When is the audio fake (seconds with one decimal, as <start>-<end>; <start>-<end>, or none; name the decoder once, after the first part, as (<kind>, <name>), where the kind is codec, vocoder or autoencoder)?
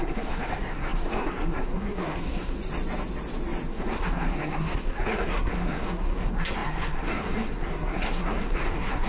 0.0-2.6 (codec, SNAC); 3.7-9.1